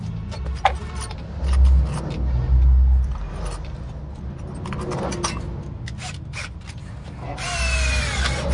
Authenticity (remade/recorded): recorded